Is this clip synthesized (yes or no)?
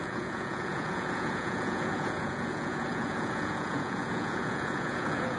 yes